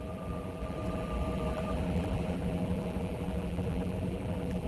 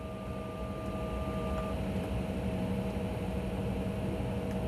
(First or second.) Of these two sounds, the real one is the second